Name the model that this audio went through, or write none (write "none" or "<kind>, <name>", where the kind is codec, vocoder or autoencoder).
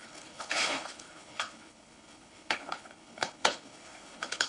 codec, HILCodec